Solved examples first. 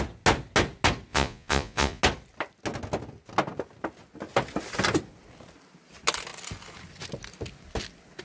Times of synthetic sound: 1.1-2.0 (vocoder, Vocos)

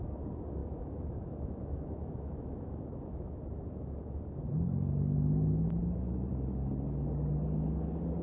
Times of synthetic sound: 0.6-4.2 (autoencoder, DAC-VAE); 5.8-6.3

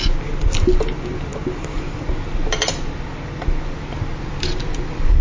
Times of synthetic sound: none

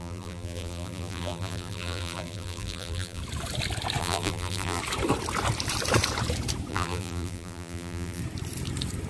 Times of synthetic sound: 0.0-3.2 (vocoder, BigVGAN v2); 4.0-4.8; 6.7-8.2